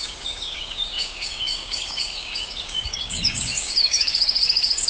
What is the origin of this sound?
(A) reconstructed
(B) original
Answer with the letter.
A